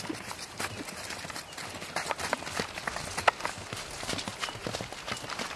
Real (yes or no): yes